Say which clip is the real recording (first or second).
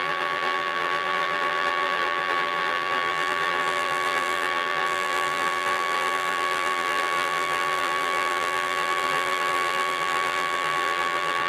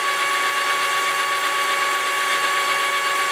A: second